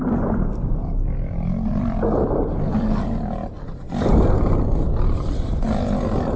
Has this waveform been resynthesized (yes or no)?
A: no